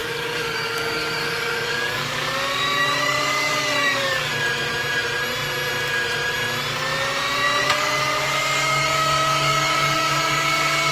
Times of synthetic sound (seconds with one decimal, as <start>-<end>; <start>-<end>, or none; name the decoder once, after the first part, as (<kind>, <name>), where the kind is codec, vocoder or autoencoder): 0.0-4.3 (codec, DAC); 7.6-10.9